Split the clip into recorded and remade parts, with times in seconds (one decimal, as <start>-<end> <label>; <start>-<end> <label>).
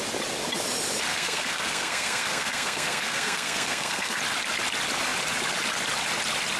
0.0-1.1 recorded; 1.1-4.2 remade; 4.2-6.6 recorded